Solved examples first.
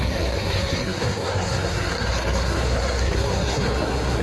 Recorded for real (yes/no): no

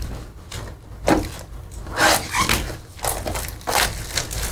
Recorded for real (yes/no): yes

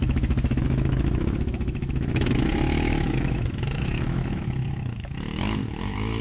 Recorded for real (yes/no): no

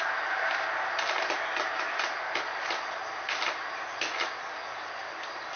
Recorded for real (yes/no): yes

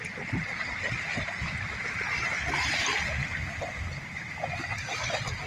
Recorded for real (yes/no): yes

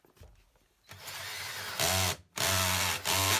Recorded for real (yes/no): yes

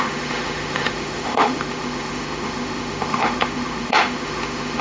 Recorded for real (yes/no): no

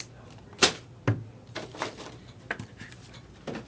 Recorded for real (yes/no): yes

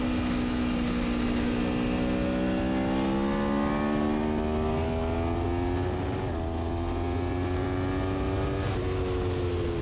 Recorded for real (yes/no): yes